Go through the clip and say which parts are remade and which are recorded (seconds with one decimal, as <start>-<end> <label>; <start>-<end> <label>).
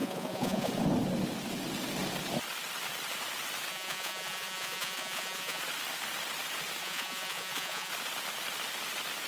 0.0-0.7 remade; 0.7-3.7 recorded; 3.7-5.6 remade; 5.6-6.8 recorded; 6.8-7.9 remade; 7.9-9.3 recorded